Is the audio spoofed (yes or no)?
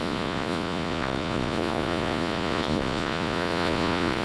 yes